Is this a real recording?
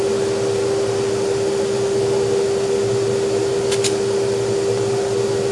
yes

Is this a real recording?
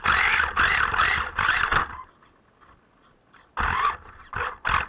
yes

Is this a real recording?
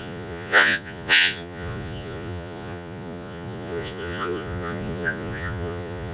no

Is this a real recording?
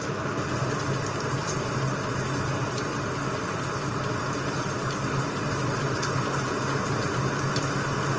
yes